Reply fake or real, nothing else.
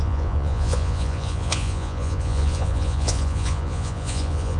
fake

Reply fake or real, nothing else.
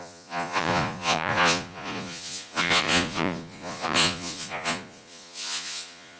fake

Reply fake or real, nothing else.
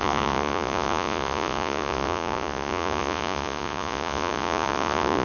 fake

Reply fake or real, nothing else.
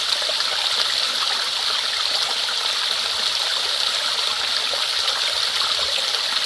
real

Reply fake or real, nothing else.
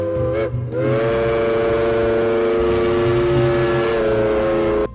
real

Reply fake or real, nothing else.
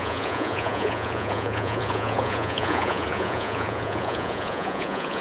fake